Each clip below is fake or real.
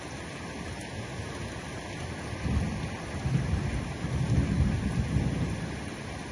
real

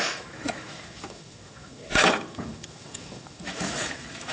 fake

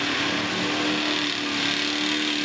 real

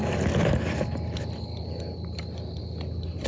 real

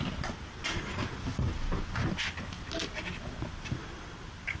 real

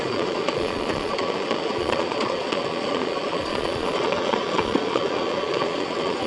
fake